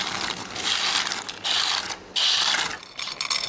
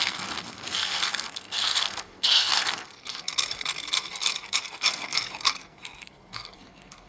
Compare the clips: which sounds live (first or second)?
first